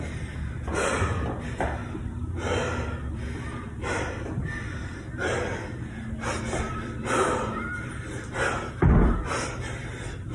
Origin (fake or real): real